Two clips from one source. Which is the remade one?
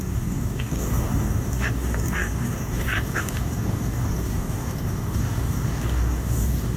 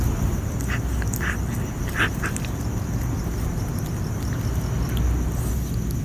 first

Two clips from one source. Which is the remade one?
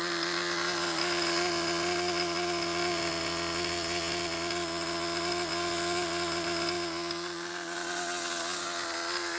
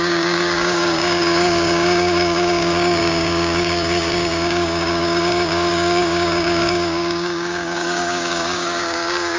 second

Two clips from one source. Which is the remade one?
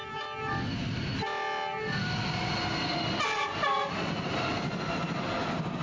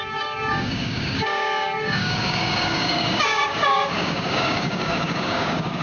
second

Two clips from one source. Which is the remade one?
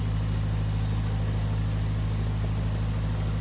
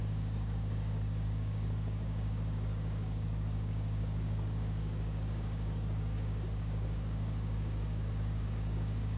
second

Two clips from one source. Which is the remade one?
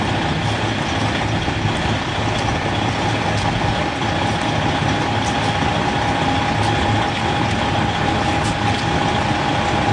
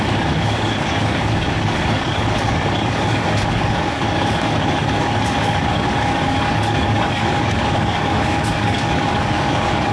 second